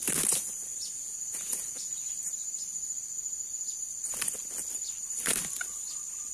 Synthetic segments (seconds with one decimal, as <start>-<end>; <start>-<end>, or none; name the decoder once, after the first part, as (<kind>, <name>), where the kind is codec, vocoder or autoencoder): 0.7-2.1 (vocoder, Vocos)